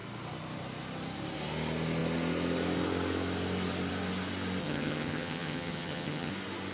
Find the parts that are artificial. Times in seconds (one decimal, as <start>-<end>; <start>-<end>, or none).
4.6-6.3